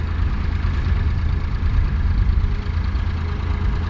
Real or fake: real